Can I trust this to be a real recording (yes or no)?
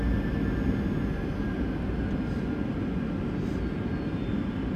yes